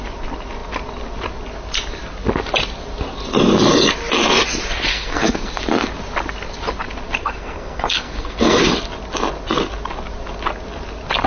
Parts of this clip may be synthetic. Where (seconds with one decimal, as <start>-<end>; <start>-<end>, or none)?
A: 4.9-5.6; 7.2-8.6